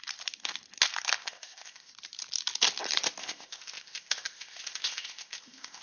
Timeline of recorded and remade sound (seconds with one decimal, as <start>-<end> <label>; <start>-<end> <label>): 0.0-1.2 recorded; 1.2-1.9 remade; 1.9-3.2 recorded; 3.2-5.8 remade